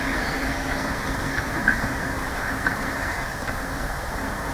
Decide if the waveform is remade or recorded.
remade